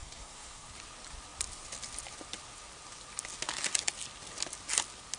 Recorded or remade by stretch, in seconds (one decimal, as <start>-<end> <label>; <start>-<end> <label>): 0.0-0.7 remade; 0.7-5.2 recorded